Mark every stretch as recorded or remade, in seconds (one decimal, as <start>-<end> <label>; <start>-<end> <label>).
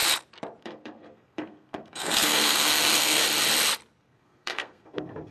0.0-0.6 recorded; 0.6-3.2 remade; 3.2-4.0 recorded; 4.0-5.3 remade